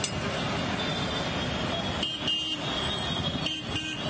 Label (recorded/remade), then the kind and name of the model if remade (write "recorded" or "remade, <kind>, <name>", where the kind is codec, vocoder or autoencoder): recorded